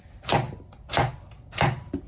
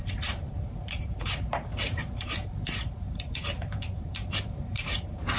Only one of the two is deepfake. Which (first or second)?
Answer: second